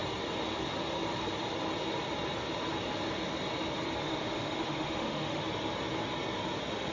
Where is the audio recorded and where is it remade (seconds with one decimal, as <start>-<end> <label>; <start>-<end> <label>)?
0.0-4.0 recorded; 4.0-5.4 remade; 5.4-6.9 recorded

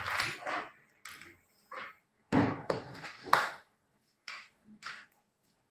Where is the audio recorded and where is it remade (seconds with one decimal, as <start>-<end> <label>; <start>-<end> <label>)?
0.0-2.0 recorded; 2.0-5.7 remade

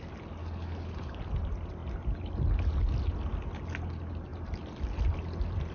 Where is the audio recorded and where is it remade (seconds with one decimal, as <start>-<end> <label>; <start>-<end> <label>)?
0.0-0.4 recorded; 0.4-1.2 remade; 1.2-5.7 recorded

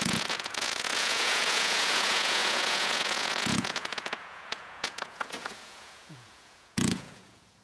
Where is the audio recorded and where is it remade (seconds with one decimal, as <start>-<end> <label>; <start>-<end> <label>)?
0.0-7.6 remade

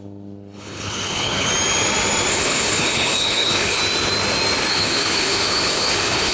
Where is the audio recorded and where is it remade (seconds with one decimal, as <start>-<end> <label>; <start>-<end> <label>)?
0.0-1.5 remade; 1.5-2.3 recorded; 2.3-3.8 remade; 3.8-4.7 recorded; 4.7-6.3 remade

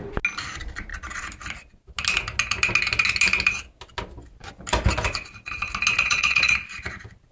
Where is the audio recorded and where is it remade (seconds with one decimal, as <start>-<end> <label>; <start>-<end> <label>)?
0.0-6.0 recorded; 6.0-6.5 remade; 6.5-7.3 recorded

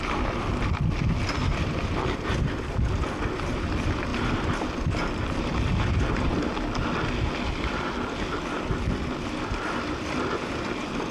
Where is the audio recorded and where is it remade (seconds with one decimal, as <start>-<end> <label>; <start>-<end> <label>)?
0.0-4.1 recorded; 4.1-5.9 remade; 5.9-11.1 recorded

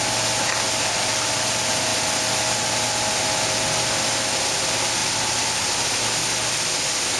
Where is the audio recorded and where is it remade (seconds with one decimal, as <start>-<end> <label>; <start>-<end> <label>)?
0.0-7.2 recorded